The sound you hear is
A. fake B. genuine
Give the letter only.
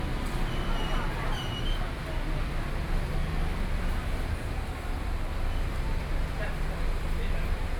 B